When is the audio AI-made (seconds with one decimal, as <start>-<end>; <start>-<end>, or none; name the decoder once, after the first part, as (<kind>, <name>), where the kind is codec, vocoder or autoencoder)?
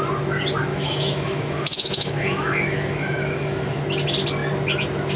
0.7-3.8 (autoencoder, DAC-VAE)